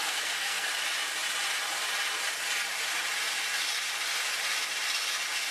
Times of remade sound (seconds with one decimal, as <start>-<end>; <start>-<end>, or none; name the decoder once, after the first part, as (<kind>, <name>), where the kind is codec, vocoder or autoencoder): 0.0-0.7 (codec, SNAC)